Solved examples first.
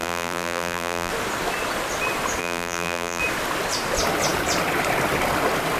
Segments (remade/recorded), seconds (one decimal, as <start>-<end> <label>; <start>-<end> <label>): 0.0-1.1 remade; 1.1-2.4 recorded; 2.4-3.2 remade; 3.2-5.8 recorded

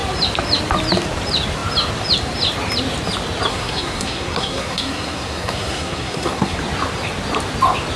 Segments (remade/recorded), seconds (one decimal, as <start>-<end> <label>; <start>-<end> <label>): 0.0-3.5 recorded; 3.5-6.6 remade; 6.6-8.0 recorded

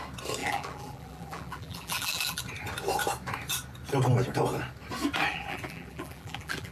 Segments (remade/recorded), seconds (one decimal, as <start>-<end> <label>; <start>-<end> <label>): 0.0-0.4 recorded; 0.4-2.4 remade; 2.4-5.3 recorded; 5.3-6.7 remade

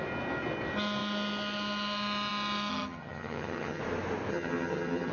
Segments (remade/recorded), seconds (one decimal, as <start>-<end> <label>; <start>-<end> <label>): 0.0-2.7 recorded; 2.7-3.8 remade; 3.8-4.3 recorded; 4.3-5.1 remade